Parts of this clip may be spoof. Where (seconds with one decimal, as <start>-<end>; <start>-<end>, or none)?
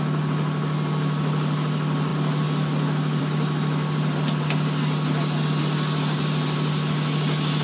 none